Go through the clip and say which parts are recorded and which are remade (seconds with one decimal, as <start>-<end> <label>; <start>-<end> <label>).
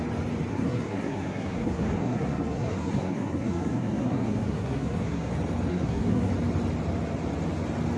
0.0-0.5 recorded; 0.5-5.3 remade; 5.3-5.7 recorded; 5.7-6.3 remade; 6.3-8.0 recorded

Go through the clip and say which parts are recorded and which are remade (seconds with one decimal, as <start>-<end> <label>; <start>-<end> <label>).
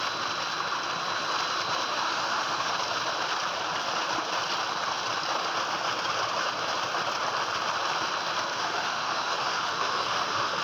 0.0-1.9 recorded; 1.9-2.7 remade; 2.7-8.5 recorded; 8.5-10.6 remade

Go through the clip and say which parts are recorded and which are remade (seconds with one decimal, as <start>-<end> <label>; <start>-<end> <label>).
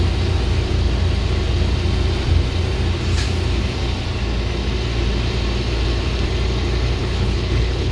0.0-7.0 recorded; 7.0-7.9 remade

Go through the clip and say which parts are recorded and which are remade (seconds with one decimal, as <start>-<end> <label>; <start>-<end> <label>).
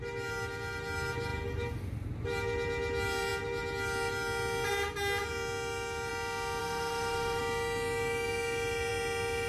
0.0-6.6 recorded; 6.6-7.4 remade; 7.4-9.5 recorded